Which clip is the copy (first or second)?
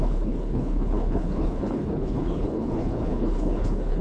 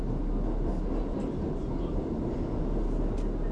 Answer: first